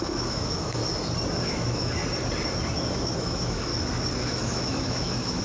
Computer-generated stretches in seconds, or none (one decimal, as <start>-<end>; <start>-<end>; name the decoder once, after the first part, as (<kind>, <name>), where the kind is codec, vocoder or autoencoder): 0.0-0.8 (autoencoder, DAC-VAE); 1.4-2.0; 2.9-3.7; 4.2-5.4